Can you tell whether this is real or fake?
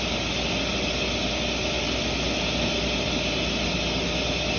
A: real